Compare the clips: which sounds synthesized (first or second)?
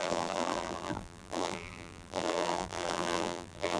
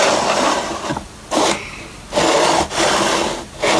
first